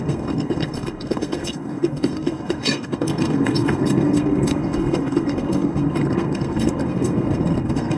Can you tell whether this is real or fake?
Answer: fake